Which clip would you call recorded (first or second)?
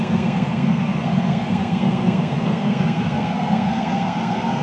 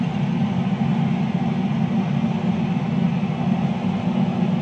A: second